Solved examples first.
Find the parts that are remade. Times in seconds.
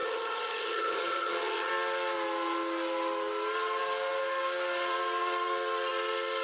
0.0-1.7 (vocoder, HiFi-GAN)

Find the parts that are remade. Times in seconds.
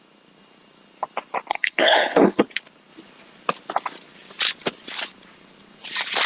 1.5-2.4 (codec, HILCodec)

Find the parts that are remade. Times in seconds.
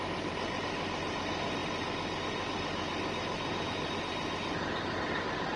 none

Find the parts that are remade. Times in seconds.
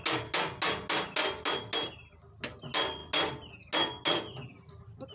none